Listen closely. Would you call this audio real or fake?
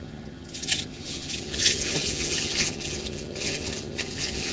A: fake